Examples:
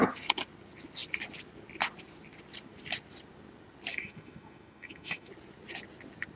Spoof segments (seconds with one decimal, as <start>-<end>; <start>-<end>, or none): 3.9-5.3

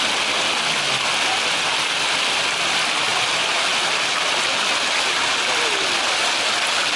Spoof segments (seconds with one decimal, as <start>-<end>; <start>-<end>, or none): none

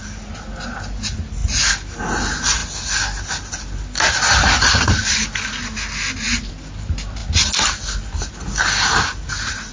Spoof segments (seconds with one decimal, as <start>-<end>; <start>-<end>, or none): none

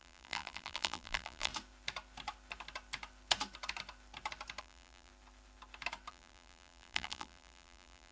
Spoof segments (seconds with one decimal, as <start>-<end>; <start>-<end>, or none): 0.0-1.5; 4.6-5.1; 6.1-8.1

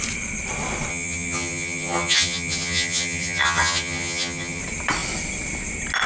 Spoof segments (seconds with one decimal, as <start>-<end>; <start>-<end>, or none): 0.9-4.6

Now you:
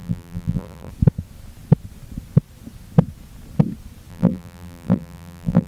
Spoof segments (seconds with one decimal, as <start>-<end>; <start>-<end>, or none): 0.0-0.9; 4.1-5.7